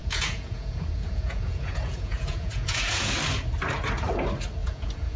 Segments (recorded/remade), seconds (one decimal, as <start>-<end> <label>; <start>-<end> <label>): 0.0-3.1 remade; 3.1-4.6 recorded; 4.6-5.2 remade